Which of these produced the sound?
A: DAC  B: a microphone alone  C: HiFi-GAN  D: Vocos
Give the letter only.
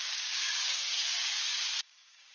A